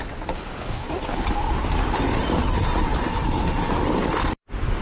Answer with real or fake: real